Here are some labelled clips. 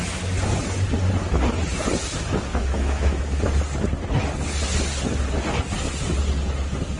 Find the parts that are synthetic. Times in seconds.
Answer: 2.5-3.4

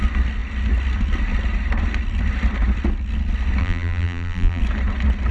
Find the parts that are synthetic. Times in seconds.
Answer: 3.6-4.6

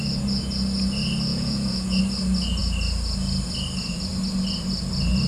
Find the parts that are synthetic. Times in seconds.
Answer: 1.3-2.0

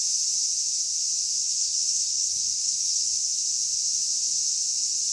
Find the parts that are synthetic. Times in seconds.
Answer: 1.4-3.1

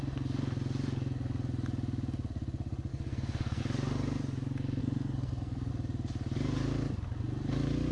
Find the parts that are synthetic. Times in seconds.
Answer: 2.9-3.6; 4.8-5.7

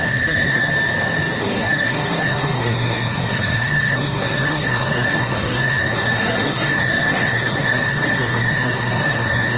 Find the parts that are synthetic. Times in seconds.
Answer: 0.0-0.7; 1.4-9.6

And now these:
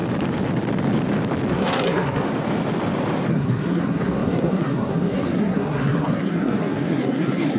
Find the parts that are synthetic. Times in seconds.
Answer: 1.5-2.3; 3.3-7.6

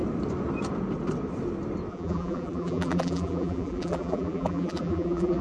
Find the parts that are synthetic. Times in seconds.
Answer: 1.9-5.4